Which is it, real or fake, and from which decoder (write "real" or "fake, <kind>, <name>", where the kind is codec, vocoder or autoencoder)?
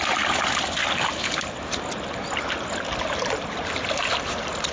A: real